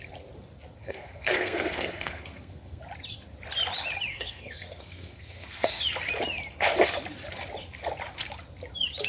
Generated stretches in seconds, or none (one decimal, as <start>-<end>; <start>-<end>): 0.8-2.8; 4.1-5.8